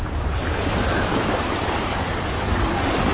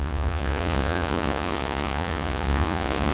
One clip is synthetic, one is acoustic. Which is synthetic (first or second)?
second